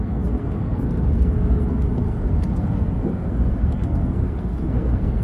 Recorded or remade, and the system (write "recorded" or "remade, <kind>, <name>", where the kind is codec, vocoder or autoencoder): remade, codec, SNAC